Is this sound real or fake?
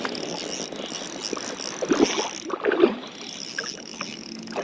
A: real